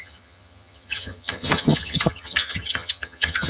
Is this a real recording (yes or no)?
no